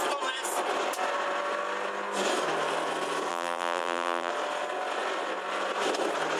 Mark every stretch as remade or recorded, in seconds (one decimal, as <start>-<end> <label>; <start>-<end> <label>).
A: 0.0-3.3 recorded; 3.3-4.3 remade; 4.3-6.4 recorded